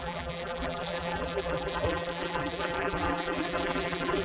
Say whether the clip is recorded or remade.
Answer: remade